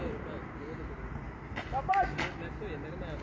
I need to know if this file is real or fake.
real